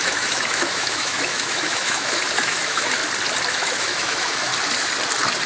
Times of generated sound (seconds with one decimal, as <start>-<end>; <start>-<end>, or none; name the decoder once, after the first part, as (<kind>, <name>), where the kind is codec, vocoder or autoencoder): 0.0-3.0 (autoencoder, DAC-VAE); 3.5-4.5